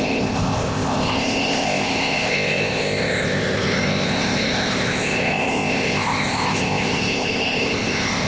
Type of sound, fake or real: fake